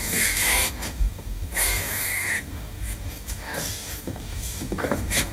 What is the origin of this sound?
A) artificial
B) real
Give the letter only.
A